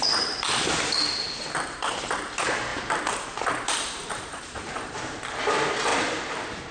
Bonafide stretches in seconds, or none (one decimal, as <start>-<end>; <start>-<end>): 0.0-2.7; 5.2-6.7